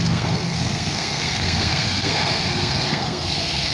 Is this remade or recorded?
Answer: remade